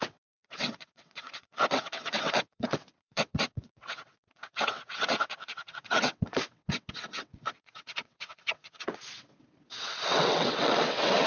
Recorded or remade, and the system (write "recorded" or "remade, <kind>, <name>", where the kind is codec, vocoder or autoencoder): remade, vocoder, WaveNeXt